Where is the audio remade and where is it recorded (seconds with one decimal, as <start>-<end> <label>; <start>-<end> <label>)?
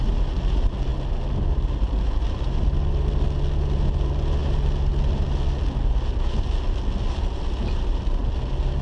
0.0-8.8 recorded